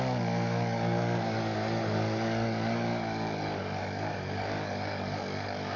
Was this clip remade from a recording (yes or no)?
yes